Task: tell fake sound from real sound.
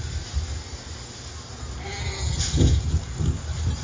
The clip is real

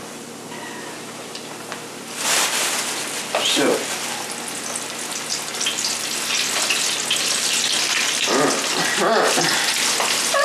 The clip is real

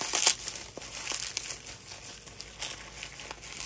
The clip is real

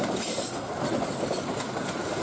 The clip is fake